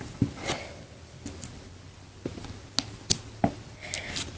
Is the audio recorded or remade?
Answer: recorded